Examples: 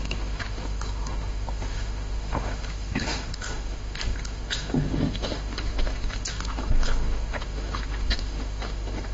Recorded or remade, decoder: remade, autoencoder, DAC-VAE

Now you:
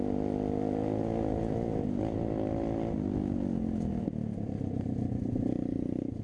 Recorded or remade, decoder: recorded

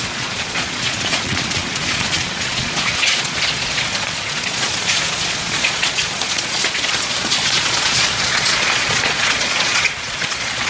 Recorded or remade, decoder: remade, vocoder, Vocos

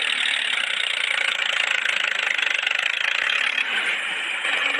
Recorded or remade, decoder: recorded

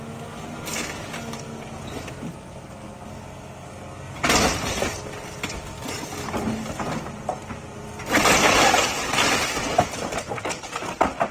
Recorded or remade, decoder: recorded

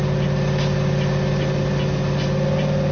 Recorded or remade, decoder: recorded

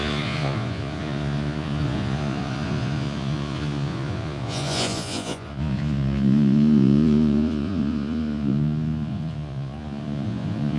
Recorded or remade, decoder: remade, vocoder, Vocos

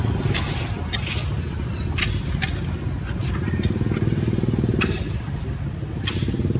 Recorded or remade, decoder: recorded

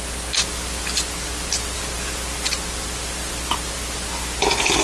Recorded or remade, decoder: recorded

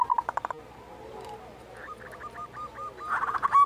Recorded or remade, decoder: recorded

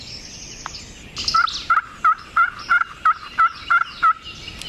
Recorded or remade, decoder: recorded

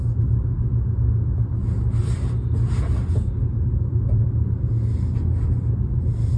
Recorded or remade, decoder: recorded